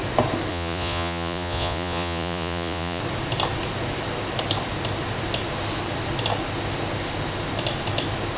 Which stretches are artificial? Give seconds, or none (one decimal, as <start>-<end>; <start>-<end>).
0.5-3.0